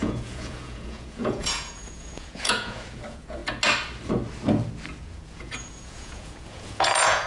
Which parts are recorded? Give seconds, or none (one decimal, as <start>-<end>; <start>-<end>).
3.4-5.0